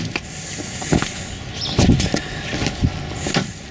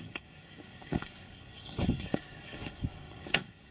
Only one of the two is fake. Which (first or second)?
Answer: second